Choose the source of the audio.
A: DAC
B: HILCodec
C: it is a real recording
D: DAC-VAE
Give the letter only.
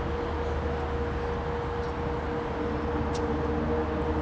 C